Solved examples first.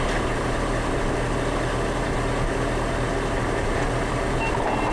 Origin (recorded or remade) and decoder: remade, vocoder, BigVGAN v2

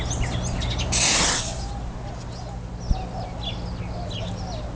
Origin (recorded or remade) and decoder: recorded